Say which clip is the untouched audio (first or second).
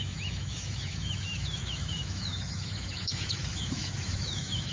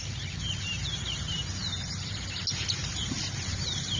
second